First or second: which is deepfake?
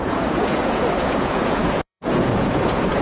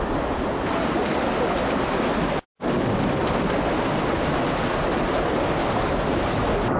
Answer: first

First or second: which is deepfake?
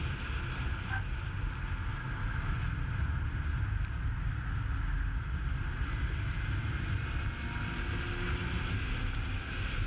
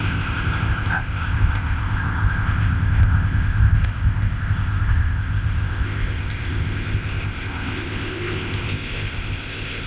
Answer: second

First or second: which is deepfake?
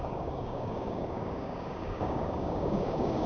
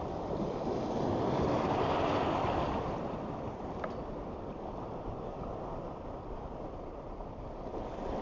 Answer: first